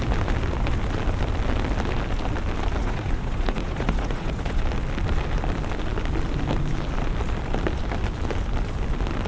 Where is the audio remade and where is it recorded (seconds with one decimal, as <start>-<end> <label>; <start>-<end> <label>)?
0.0-2.8 recorded; 2.8-4.6 remade; 4.6-9.3 recorded